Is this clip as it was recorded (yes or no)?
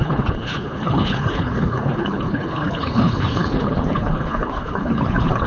no